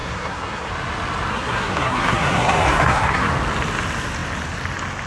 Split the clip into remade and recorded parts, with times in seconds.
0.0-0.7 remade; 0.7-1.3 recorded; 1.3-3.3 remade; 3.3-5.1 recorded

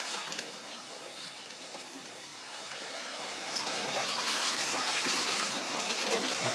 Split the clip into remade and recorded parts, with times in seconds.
0.0-6.5 remade